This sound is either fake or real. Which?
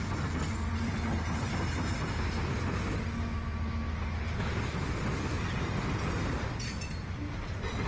real